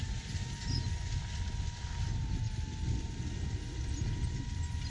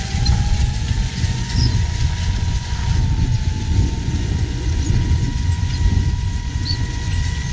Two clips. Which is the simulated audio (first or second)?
second